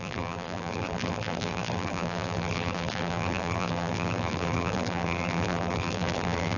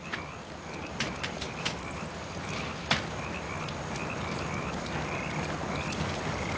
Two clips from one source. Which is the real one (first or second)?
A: second